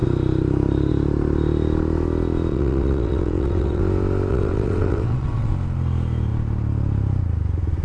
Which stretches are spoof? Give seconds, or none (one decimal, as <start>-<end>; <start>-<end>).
2.5-3.8; 4.3-5.5